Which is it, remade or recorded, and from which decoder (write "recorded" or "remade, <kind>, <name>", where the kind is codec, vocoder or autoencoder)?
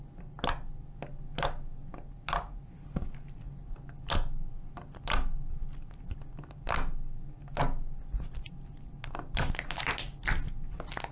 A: recorded